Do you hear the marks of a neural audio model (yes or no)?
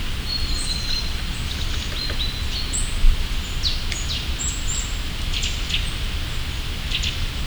no